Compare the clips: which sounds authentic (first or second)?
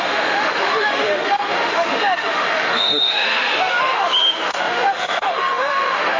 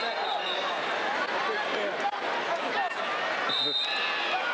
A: second